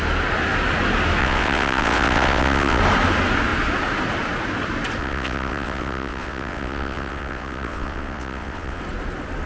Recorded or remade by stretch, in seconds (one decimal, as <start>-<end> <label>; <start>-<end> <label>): 0.0-1.2 recorded; 1.2-2.8 remade; 2.8-5.0 recorded; 5.0-8.8 remade; 8.8-9.5 recorded